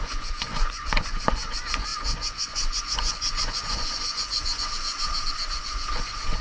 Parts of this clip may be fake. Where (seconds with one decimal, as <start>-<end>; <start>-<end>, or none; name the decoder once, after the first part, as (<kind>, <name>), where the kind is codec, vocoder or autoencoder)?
0.0-5.0 (vocoder, Vocos); 5.5-6.4